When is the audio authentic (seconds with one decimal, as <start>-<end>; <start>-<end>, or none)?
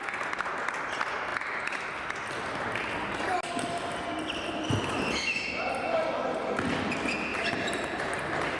0.0-7.3; 8.1-8.6